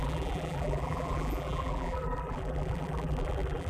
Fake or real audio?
fake